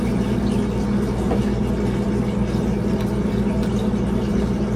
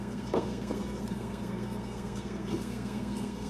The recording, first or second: first